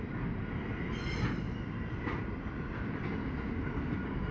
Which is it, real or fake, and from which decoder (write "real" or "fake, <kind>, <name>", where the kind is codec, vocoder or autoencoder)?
real